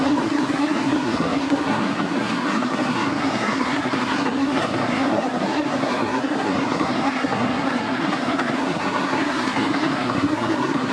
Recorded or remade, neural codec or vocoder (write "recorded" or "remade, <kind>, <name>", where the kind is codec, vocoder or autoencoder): remade, codec, SNAC